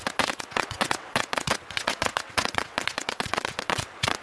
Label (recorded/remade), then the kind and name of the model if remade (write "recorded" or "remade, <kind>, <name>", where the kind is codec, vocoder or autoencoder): remade, vocoder, WaveNeXt